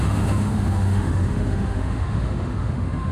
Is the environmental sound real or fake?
fake